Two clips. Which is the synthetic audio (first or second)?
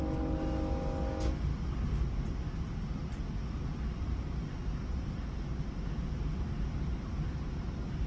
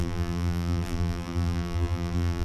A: second